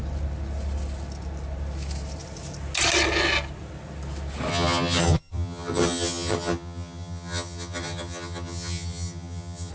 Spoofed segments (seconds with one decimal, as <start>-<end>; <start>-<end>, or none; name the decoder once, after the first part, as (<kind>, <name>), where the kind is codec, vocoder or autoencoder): 4.5-9.7 (vocoder, HiFi-GAN)